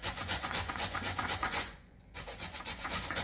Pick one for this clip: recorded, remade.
remade